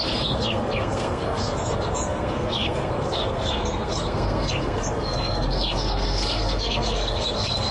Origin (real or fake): fake